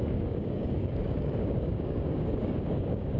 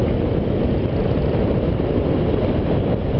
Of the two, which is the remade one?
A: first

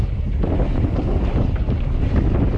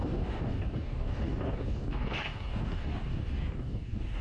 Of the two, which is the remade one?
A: second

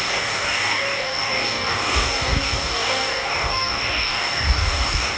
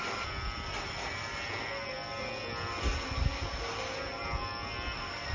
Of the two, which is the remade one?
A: first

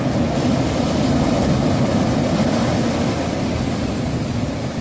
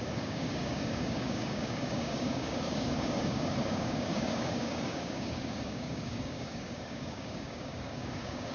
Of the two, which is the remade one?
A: second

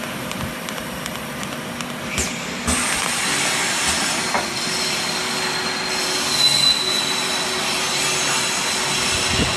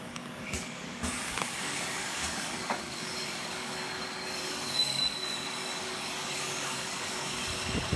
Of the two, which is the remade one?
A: second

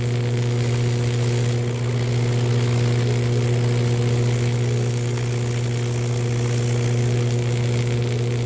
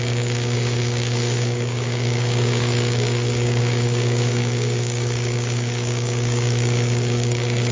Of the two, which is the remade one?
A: second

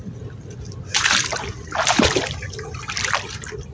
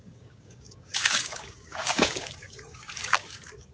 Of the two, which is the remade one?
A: second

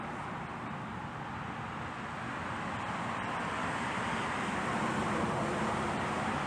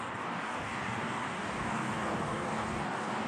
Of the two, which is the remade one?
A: second